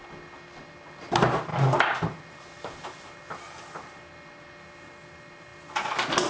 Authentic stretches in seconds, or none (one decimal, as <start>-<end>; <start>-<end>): 0.0-6.3